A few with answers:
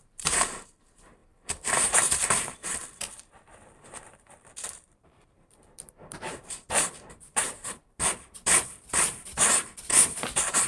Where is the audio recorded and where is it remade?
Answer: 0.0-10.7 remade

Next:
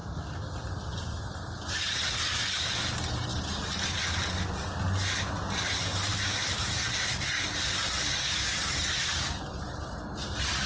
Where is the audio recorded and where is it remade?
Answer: 0.0-6.1 recorded; 6.1-7.1 remade; 7.1-8.5 recorded; 8.5-10.0 remade; 10.0-10.7 recorded